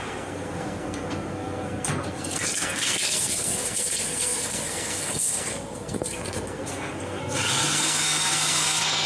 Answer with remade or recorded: remade